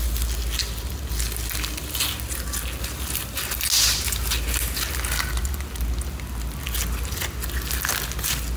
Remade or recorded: recorded